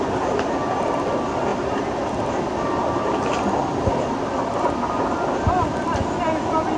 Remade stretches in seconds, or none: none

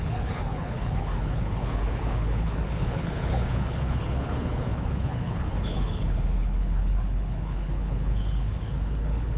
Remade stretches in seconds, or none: 0.0-9.4 (codec, HILCodec)

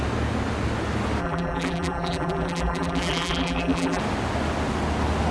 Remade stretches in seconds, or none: 1.2-4.0 (vocoder, BigVGAN v2)

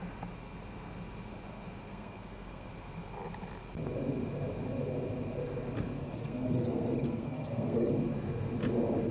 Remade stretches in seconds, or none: 1.9-2.7 (codec, SNAC); 6.0-7.9